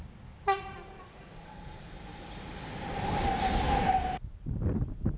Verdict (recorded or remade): recorded